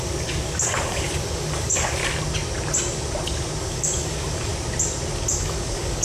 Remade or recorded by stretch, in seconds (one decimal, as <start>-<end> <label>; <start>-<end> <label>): 0.0-2.0 remade; 2.0-3.6 recorded; 3.6-4.5 remade; 4.5-5.3 recorded; 5.3-6.0 remade